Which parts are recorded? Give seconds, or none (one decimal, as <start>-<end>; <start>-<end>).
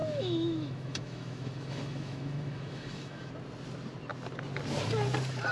3.3-5.5